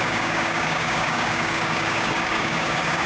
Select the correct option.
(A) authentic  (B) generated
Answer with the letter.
B